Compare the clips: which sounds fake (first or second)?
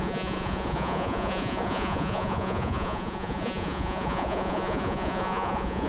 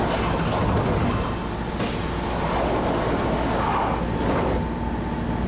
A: first